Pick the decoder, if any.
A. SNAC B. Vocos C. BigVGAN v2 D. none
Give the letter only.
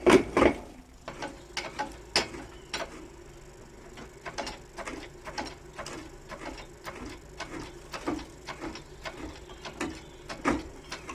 D